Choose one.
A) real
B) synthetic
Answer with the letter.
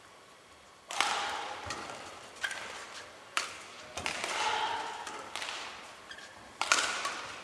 B